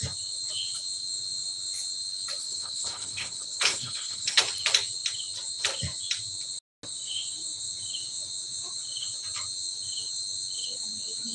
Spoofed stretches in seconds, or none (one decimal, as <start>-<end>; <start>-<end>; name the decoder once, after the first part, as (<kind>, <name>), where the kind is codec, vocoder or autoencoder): 2.4-4.4 (codec, HILCodec)